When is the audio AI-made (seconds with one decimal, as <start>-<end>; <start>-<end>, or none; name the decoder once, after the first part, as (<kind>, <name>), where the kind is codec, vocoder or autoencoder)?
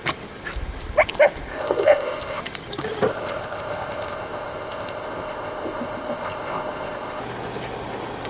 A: 1.5-2.4 (codec, ZipCodec); 3.1-7.2